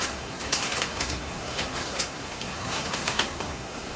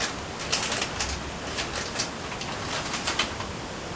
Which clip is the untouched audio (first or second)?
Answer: second